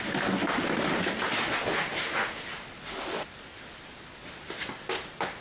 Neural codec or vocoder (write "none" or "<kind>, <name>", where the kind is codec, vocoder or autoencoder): none